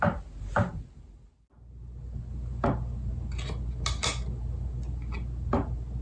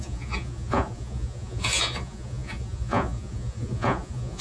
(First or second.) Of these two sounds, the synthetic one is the second